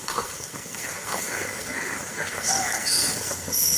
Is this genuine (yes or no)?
no